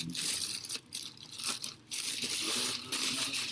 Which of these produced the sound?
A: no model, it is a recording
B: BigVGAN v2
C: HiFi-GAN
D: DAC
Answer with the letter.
B